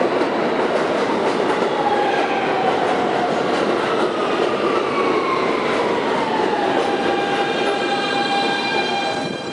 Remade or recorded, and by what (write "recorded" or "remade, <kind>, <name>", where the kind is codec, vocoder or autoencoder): recorded